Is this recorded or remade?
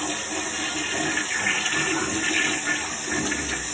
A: recorded